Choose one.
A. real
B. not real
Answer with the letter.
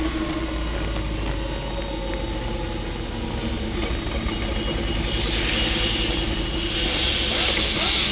A